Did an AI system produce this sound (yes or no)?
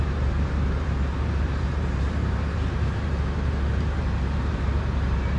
yes